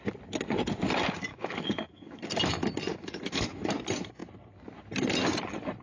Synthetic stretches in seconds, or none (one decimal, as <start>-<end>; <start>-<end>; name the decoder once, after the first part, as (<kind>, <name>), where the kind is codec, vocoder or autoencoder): 1.3-2.2 (autoencoder, DAC-VAE); 2.9-3.7